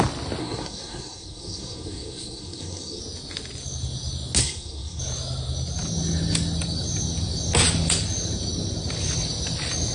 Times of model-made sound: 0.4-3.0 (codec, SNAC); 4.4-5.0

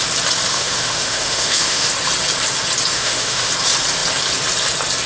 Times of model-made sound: 0.5-1.9 (autoencoder, DAC-VAE); 2.9-3.5

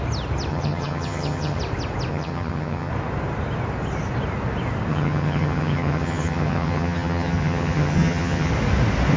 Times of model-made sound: 0.5-1.6 (vocoder, HiFi-GAN); 2.1-2.9; 4.9-8.5

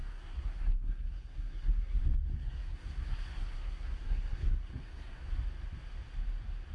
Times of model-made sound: 0.0-2.0 (codec, SNAC); 2.4-5.3

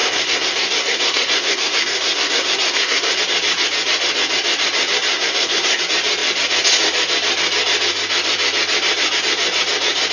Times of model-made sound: 0.0-3.2 (codec, SNAC); 5.1-5.8

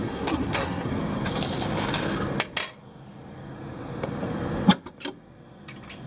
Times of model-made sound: 0.0-0.9 (codec, SNAC)

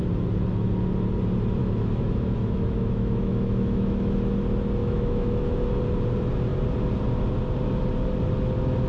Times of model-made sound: 1.6-4.3 (autoencoder, DAC-VAE); 4.8-5.8

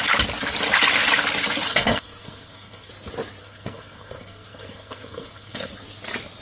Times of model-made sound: 1.7-2.9 (codec, SNAC); 3.4-5.7